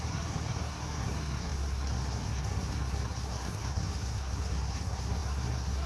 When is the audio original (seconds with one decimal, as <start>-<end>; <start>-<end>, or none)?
none